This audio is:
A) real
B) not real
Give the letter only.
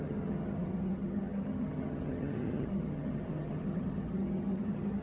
B